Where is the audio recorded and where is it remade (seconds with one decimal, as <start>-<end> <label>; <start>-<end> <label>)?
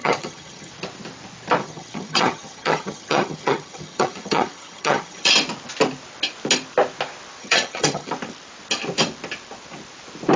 0.0-0.7 remade; 0.7-1.6 recorded; 1.6-5.3 remade; 5.3-7.4 recorded; 7.4-8.1 remade; 8.1-10.4 recorded